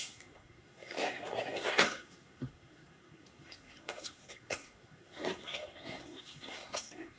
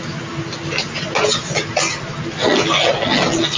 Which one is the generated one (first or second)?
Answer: first